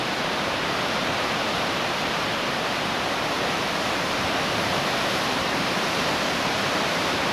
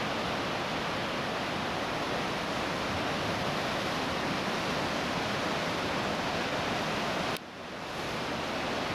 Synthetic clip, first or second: first